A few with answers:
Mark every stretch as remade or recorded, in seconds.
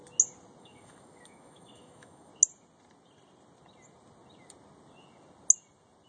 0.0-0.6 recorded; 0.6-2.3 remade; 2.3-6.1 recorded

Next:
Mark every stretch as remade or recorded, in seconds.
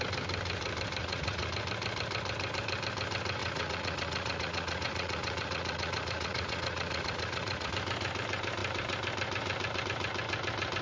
0.0-1.0 recorded; 1.0-1.5 remade; 1.5-3.4 recorded; 3.4-7.7 remade; 7.7-10.8 recorded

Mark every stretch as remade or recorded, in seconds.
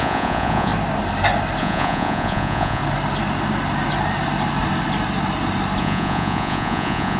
0.0-0.7 remade; 0.7-1.6 recorded; 1.6-2.8 remade; 2.8-5.8 recorded; 5.8-7.2 remade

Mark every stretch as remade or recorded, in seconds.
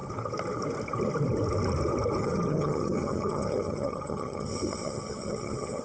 0.0-2.2 recorded; 2.2-5.8 remade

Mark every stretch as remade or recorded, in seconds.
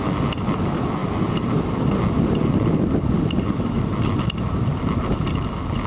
0.0-1.0 recorded; 1.0-1.8 remade; 1.8-5.9 recorded